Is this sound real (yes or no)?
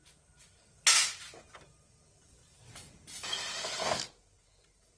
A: yes